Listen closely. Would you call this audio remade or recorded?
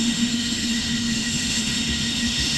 remade